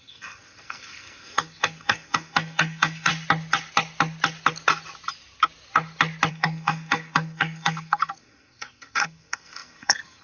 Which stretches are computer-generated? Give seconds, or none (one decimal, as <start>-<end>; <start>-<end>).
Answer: 0.0-3.1; 6.3-10.2